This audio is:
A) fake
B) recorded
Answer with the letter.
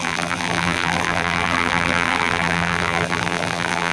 A